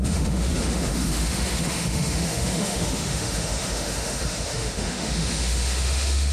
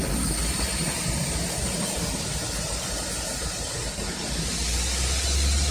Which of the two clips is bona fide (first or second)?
second